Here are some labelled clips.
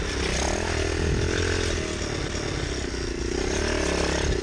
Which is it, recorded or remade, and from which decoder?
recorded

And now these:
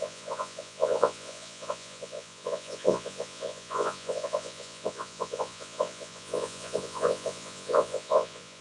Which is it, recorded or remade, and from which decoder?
remade, vocoder, Vocos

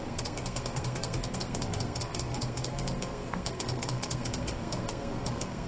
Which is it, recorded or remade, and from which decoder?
remade, codec, SNAC